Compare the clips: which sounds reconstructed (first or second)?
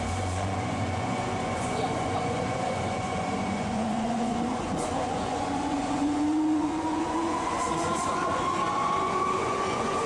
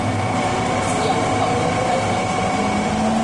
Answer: first